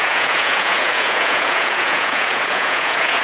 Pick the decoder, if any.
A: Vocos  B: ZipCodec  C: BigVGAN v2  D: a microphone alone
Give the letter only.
A